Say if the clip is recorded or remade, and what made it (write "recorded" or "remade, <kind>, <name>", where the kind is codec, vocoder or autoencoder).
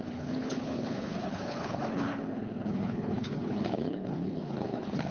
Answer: remade, codec, HILCodec